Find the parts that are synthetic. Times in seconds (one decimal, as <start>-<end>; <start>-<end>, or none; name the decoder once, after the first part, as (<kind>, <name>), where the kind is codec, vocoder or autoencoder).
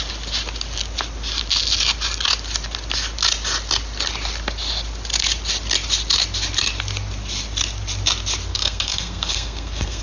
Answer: 8.5-10.0 (codec, SNAC)